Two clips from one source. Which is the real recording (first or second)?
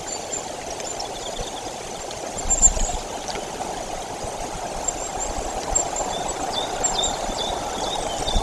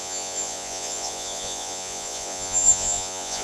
first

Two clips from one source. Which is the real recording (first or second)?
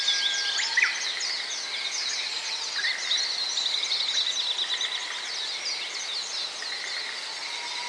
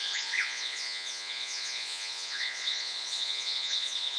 first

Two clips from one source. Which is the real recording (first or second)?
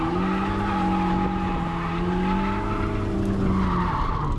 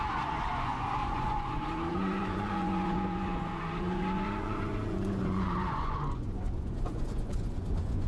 first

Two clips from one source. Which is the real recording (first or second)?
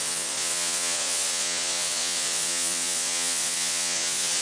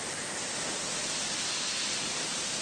second